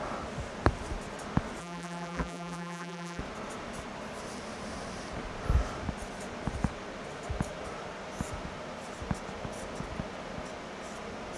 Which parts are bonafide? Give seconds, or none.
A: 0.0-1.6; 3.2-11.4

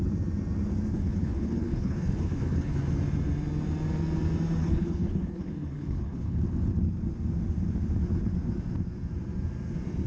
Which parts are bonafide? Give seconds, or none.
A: 0.0-0.9; 2.8-4.6; 6.4-10.1

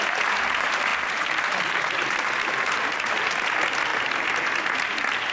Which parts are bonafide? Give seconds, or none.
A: 0.0-0.9; 3.2-5.3

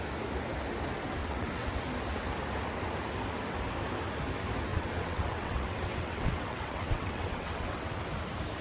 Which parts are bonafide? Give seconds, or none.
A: 0.0-1.2; 1.8-4.7; 8.0-8.6